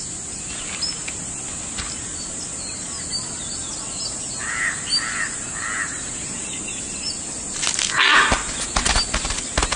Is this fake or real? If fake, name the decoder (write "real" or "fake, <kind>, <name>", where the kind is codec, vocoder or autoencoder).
real